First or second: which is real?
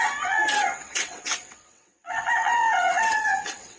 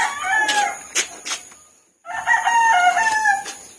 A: second